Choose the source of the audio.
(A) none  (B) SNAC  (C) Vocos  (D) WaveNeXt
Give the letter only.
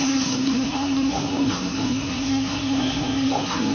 B